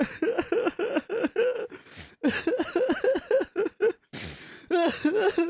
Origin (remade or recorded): recorded